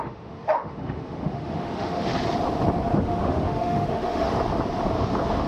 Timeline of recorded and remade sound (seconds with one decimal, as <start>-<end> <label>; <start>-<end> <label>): 0.0-2.1 remade; 2.1-3.0 recorded; 3.0-4.3 remade; 4.3-5.5 recorded